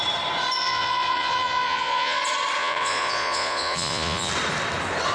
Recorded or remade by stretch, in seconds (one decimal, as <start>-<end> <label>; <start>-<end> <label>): 0.0-0.6 recorded; 0.6-2.2 remade; 2.2-2.6 recorded; 2.6-4.3 remade; 4.3-5.1 recorded